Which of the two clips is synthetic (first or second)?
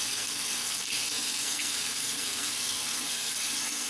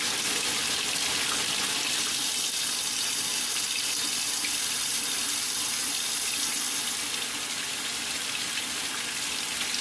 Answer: first